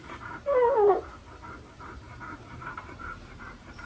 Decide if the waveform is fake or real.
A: fake